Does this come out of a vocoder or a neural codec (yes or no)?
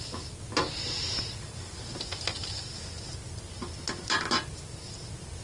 no